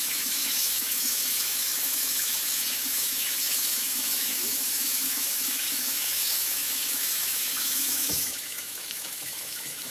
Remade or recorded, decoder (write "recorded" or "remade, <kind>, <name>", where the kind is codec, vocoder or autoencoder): remade, autoencoder, DAC-VAE